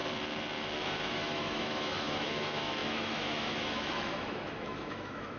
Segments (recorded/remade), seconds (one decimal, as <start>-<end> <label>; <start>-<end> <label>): 0.0-0.8 recorded; 0.8-5.4 remade